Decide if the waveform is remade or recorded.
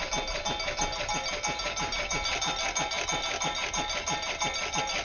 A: recorded